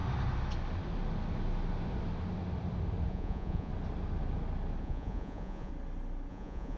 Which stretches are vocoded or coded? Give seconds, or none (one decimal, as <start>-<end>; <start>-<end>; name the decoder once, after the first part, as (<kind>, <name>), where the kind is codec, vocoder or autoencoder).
3.1-3.7 (vocoder, Vocos); 4.8-5.7; 6.3-6.8